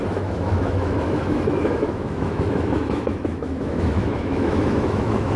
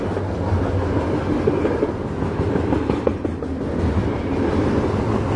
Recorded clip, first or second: second